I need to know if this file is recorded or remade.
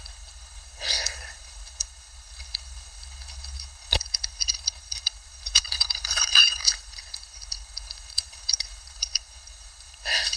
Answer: remade